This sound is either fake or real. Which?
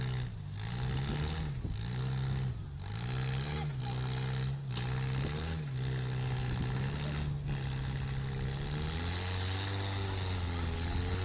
real